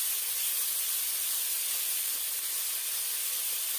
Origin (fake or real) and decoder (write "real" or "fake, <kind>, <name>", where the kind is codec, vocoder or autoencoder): real